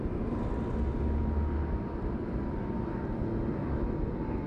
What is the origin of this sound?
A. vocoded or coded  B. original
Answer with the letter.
B